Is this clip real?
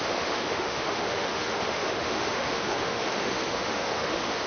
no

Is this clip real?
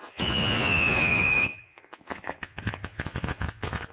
no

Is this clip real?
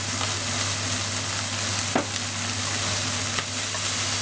yes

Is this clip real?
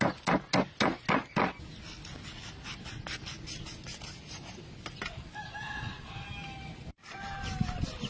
yes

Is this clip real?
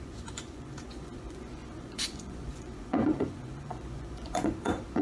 no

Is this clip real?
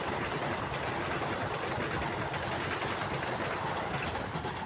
yes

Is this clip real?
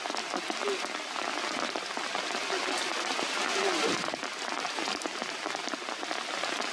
yes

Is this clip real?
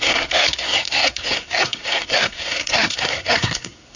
no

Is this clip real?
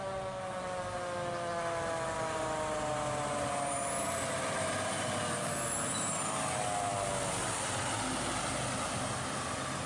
yes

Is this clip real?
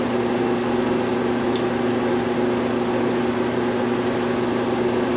yes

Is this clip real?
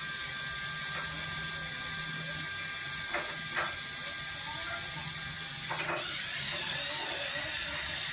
yes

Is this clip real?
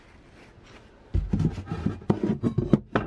yes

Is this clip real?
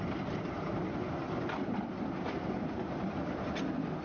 yes